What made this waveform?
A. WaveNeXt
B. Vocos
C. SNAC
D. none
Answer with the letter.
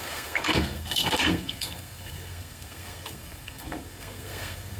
C